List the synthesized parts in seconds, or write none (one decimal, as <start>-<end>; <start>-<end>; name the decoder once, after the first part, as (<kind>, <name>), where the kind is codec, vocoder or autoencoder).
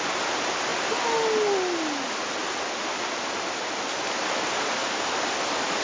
none